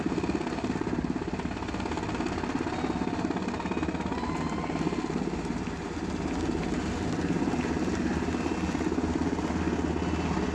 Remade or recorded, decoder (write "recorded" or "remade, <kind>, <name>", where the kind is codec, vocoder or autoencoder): recorded